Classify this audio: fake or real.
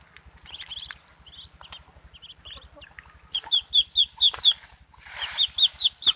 real